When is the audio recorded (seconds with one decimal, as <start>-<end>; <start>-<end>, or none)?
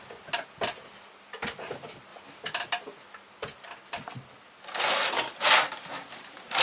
0.0-6.6